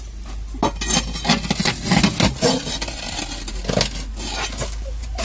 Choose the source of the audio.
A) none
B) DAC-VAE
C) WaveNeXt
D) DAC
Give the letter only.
A